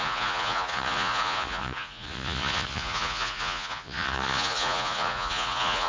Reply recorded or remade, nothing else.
remade